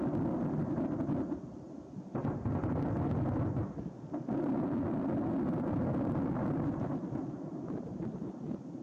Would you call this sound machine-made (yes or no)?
no